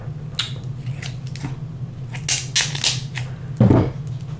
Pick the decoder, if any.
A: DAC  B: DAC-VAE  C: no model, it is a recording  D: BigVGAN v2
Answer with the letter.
C